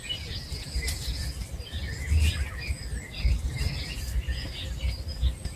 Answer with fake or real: real